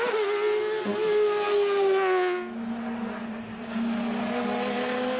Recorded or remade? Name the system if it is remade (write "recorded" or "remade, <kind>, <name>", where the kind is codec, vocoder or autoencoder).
recorded